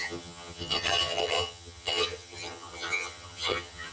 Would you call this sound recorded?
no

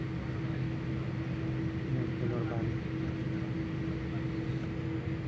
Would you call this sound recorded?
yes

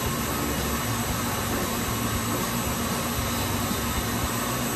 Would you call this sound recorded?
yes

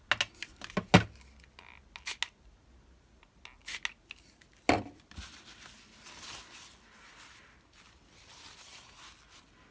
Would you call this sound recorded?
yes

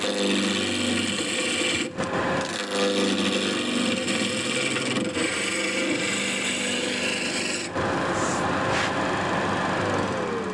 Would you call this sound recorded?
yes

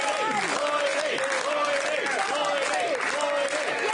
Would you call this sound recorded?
yes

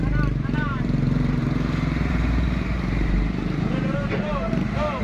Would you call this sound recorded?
no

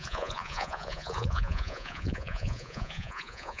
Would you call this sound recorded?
no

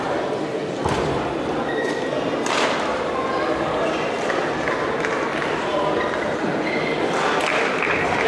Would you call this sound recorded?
yes